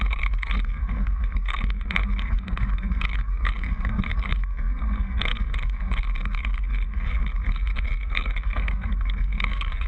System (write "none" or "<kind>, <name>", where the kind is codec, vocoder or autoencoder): codec, SNAC